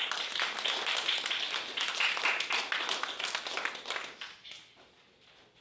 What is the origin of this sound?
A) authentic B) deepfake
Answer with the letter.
A